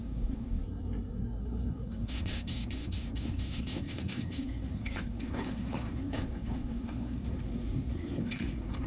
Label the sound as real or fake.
fake